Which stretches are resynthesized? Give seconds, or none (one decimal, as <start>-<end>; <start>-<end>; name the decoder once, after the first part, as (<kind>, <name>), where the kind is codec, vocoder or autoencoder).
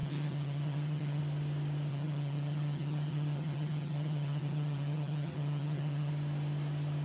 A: 0.0-1.2 (vocoder, HiFi-GAN); 1.9-6.1